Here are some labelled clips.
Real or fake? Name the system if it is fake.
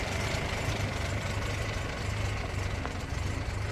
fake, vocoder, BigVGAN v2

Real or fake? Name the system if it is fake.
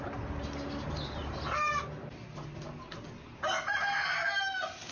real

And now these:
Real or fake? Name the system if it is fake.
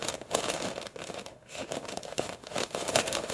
fake, autoencoder, DAC-VAE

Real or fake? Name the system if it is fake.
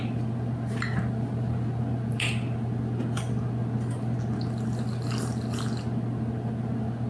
real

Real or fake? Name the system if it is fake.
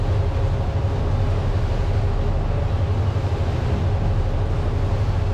real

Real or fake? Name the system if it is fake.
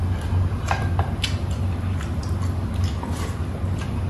real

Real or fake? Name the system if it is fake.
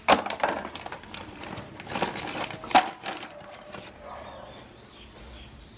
real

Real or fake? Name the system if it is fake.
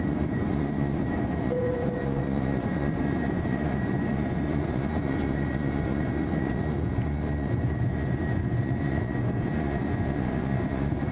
fake, vocoder, Vocos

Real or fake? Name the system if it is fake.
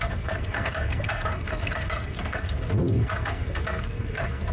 fake, codec, SNAC